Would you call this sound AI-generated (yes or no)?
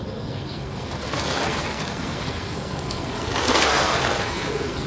yes